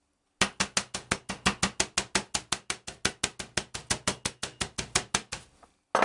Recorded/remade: recorded